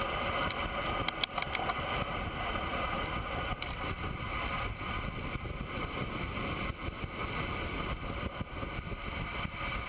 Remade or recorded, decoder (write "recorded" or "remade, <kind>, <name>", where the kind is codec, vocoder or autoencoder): recorded